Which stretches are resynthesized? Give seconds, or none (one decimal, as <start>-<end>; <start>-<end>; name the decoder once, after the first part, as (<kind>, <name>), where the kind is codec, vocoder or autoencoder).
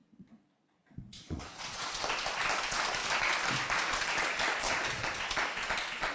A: 0.0-1.9 (vocoder, Vocos)